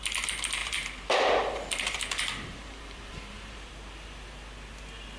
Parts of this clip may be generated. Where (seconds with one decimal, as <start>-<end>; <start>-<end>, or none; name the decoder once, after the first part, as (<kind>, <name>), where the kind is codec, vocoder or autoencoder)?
0.6-3.7 (vocoder, BigVGAN v2)